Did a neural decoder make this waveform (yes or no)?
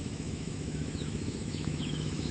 yes